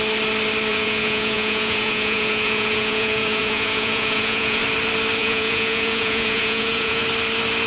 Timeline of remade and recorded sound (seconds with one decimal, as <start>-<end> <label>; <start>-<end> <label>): 0.0-0.7 recorded; 0.7-4.6 remade; 4.6-5.2 recorded; 5.2-7.0 remade; 7.0-7.7 recorded